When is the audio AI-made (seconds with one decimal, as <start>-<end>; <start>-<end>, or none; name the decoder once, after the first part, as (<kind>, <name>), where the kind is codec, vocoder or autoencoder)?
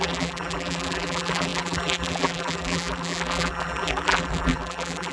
0.0-5.1 (vocoder, BigVGAN v2)